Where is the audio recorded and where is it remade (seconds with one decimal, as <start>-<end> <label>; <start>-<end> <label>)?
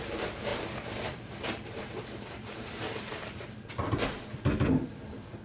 0.0-0.5 recorded; 0.5-3.7 remade; 3.7-5.4 recorded